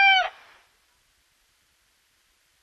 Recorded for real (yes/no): yes